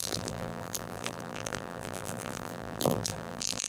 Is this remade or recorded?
remade